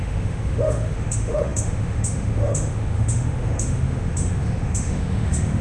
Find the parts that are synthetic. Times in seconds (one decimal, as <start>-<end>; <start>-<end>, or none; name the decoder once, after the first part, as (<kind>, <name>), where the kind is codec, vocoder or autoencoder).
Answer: 0.0-5.6 (autoencoder, DAC-VAE)